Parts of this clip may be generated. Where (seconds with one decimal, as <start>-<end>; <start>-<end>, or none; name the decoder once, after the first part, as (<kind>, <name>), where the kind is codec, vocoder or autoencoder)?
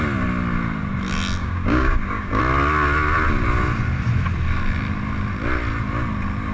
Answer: 1.4-2.4 (codec, DAC)